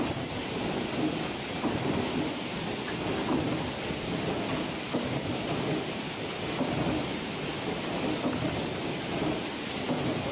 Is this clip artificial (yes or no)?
no